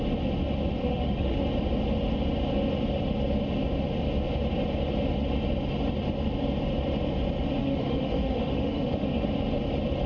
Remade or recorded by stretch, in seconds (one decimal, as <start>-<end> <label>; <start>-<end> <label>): 0.0-0.8 recorded; 0.8-1.4 remade; 1.4-7.6 recorded; 7.6-9.3 remade; 9.3-10.1 recorded